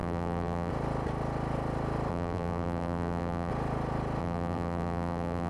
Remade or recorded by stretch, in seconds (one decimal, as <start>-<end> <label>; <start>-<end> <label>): 0.0-0.7 remade; 0.7-2.1 recorded; 2.1-3.5 remade; 3.5-4.2 recorded; 4.2-5.5 remade